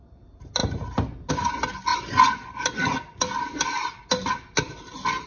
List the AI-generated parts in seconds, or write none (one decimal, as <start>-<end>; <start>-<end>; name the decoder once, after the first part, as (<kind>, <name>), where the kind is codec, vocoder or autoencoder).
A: none